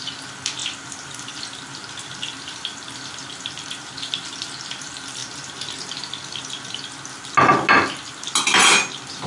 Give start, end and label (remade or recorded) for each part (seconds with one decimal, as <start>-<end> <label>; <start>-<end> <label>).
0.0-9.3 recorded